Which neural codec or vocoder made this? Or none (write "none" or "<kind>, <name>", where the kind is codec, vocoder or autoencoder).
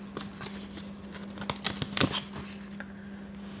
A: none